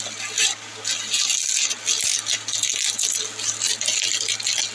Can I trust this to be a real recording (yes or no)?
yes